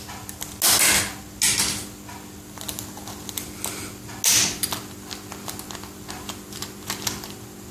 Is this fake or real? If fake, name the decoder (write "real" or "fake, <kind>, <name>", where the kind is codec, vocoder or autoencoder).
real